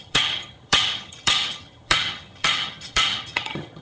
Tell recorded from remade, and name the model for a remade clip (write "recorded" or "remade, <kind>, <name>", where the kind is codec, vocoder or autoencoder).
remade, vocoder, HiFi-GAN